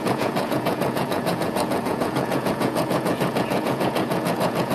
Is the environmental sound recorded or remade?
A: remade